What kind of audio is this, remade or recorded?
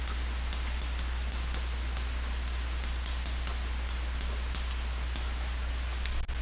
recorded